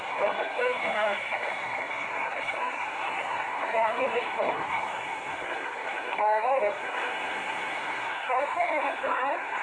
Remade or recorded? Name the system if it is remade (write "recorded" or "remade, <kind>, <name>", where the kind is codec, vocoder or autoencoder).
remade, codec, SNAC